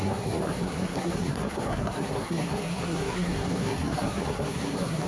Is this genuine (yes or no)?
no